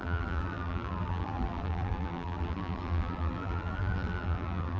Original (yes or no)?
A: no